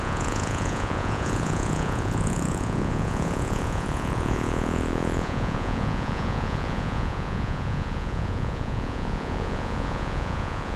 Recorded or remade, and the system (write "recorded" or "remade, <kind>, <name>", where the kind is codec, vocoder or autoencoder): remade, vocoder, Vocos